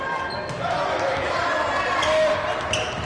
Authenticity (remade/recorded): recorded